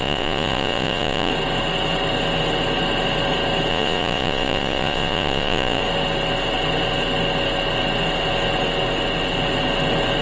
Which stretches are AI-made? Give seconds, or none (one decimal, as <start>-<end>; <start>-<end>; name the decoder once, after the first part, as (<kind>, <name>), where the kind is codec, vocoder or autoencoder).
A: 0.0-1.3 (vocoder, Vocos); 3.7-5.8